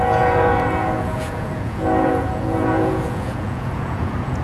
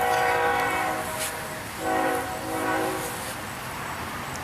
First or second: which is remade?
first